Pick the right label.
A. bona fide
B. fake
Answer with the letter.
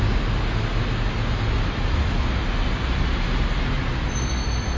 A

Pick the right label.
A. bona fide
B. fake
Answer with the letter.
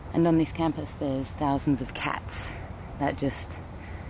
A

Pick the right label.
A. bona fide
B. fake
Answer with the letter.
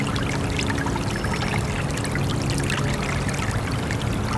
A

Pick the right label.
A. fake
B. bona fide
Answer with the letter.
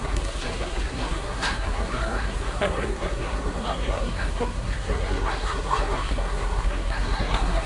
A